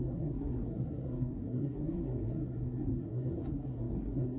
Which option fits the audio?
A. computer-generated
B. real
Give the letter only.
A